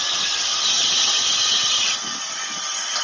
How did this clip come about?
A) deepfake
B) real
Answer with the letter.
B